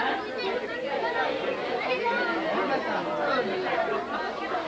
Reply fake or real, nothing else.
real